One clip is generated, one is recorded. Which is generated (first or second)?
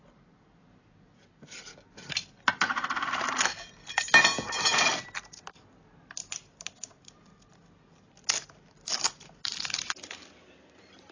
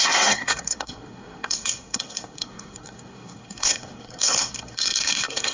second